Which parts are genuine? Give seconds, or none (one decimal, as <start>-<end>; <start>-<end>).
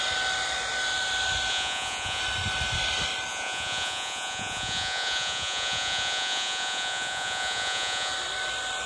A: 0.0-1.5; 2.2-3.3; 8.1-8.9